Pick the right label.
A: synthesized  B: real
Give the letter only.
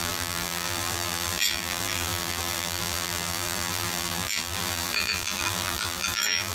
A